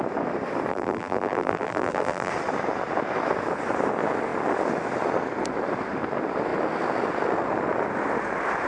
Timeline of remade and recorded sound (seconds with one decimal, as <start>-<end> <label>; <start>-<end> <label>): 0.0-0.7 recorded; 0.7-2.3 remade; 2.3-8.7 recorded